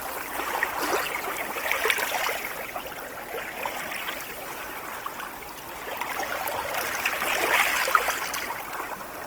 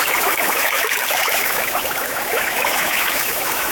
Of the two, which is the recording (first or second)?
first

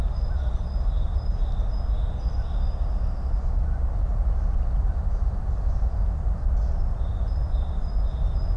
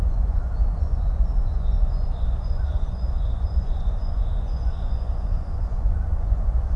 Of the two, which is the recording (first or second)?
first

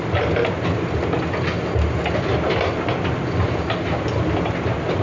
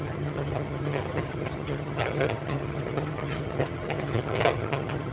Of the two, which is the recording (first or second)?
first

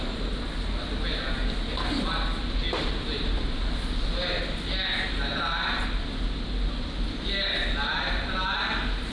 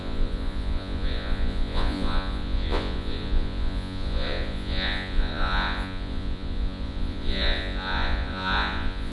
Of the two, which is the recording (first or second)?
first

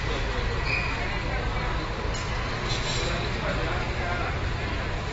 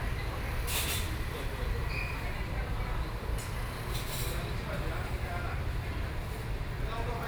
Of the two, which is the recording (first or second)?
first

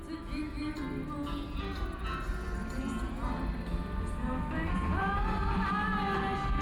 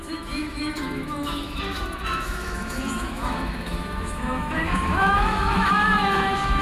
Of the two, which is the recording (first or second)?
first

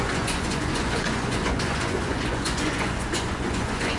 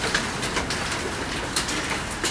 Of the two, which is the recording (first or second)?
second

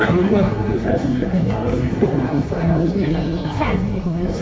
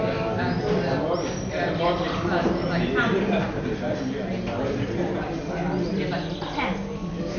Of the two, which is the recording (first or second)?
second